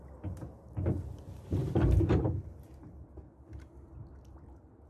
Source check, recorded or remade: recorded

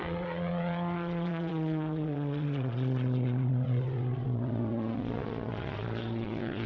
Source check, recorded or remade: remade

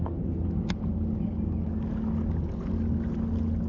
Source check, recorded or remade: recorded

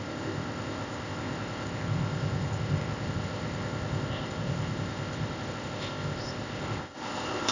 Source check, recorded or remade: remade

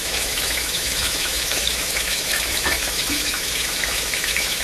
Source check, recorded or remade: remade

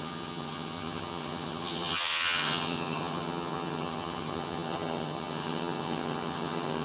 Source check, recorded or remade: remade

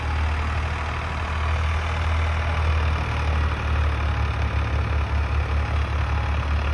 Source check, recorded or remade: recorded